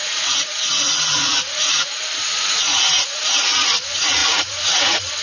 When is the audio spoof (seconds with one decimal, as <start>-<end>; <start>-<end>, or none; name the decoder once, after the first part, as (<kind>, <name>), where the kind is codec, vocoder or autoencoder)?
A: 0.0-5.2 (vocoder, Vocos)